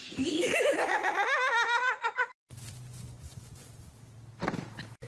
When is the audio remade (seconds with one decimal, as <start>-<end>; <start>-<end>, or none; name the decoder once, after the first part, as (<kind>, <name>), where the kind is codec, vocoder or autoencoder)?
2.5-3.7 (vocoder, Vocos)